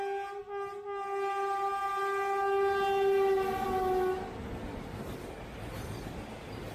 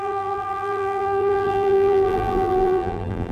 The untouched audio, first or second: first